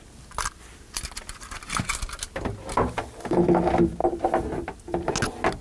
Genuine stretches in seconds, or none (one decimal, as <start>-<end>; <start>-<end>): 0.0-5.6